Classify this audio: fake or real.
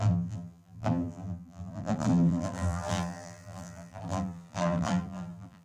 fake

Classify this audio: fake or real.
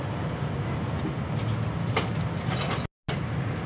real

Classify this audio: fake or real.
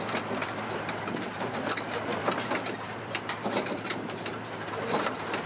fake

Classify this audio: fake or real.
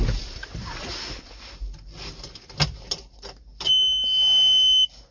real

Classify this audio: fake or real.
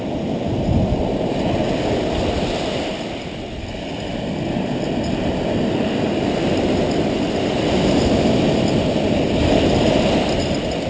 real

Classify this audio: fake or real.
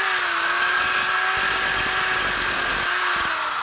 real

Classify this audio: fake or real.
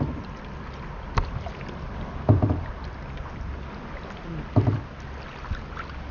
real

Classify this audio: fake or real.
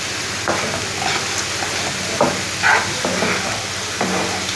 real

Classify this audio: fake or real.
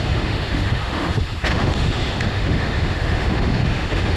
fake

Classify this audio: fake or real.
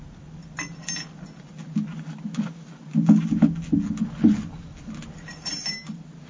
real